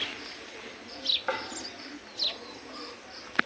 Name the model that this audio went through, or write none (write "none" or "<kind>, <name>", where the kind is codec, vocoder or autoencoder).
none